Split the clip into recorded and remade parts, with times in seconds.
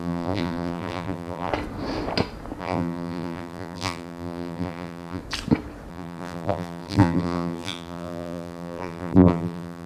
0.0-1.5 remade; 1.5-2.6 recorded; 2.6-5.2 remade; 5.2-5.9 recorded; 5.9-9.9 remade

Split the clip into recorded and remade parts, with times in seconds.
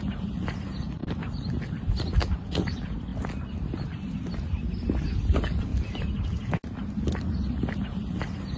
0.0-3.1 recorded; 3.1-3.9 remade; 3.9-8.6 recorded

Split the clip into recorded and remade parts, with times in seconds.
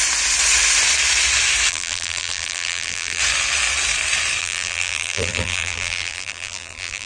0.0-1.7 recorded; 1.7-3.2 remade; 3.2-4.4 recorded; 4.4-7.1 remade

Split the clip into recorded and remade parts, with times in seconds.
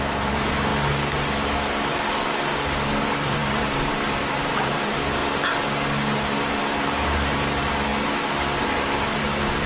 0.0-0.7 remade; 0.7-3.0 recorded; 3.0-5.2 remade; 5.2-6.5 recorded; 6.5-7.9 remade; 7.9-8.6 recorded; 8.6-9.7 remade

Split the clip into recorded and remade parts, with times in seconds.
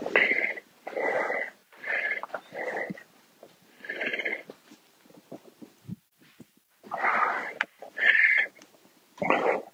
0.0-1.6 recorded; 1.6-2.2 remade; 2.2-4.1 recorded; 4.1-9.2 remade; 9.2-9.7 recorded